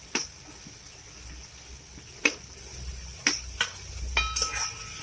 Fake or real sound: real